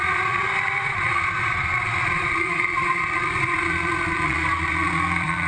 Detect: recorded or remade remade